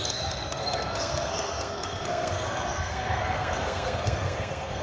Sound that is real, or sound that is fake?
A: fake